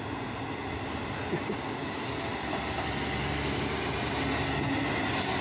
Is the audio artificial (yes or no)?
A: no